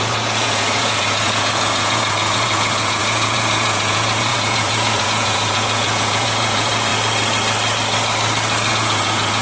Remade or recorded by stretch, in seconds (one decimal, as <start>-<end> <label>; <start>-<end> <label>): 0.0-6.9 remade; 6.9-8.7 recorded; 8.7-9.4 remade